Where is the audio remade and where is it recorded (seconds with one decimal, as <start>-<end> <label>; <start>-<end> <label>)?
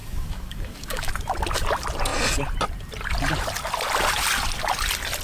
0.0-1.1 remade; 1.1-5.2 recorded